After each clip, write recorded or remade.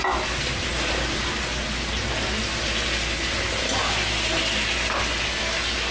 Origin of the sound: recorded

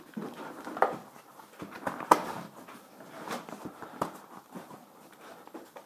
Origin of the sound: recorded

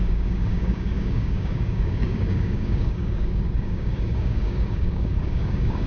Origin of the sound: remade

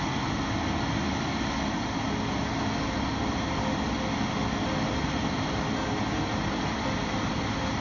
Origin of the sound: recorded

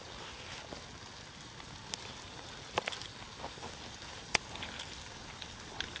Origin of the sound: recorded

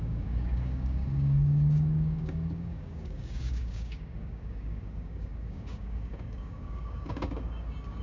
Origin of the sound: remade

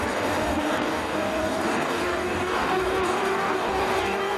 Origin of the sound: remade